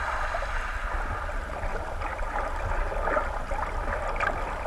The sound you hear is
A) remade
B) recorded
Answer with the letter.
B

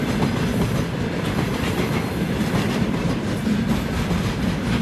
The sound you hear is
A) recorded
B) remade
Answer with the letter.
B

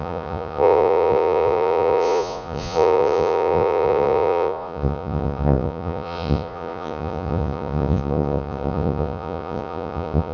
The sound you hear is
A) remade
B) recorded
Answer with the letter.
A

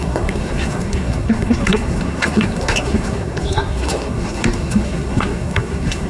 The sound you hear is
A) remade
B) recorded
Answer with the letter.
A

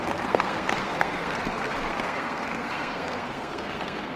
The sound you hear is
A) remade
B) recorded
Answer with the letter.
A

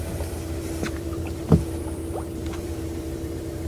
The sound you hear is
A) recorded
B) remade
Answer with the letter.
B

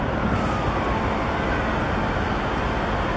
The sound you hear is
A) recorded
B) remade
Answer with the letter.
A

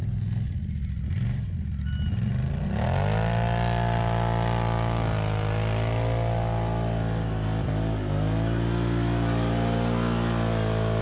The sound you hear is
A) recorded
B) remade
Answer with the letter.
A